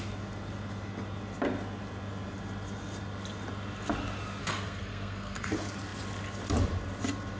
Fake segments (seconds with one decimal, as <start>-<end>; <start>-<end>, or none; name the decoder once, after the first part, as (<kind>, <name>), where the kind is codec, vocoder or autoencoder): 4.4-5.5 (codec, SNAC)